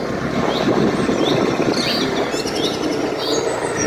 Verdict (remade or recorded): recorded